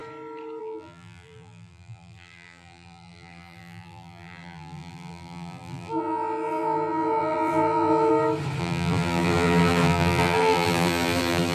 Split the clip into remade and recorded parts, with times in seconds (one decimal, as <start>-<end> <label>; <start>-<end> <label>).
0.0-0.6 recorded; 0.6-8.1 remade; 8.1-8.6 recorded; 8.6-11.5 remade